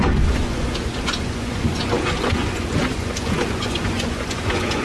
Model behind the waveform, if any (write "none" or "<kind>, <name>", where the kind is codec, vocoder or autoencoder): vocoder, Vocos